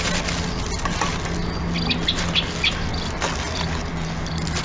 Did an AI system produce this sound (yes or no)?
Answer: no